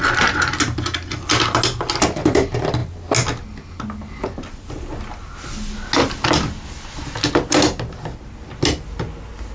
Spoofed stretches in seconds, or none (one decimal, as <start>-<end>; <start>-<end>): none